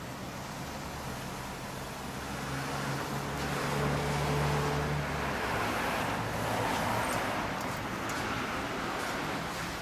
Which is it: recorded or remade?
recorded